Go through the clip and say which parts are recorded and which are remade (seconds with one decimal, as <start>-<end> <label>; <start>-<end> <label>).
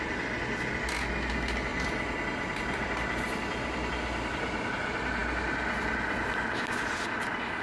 0.0-1.7 recorded; 1.7-4.4 remade; 4.4-7.6 recorded